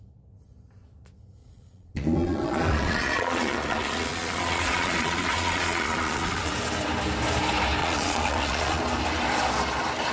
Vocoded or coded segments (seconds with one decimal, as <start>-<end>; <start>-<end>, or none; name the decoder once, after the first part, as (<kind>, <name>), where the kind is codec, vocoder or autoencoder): 1.4-6.5 (vocoder, Vocos); 7.8-8.8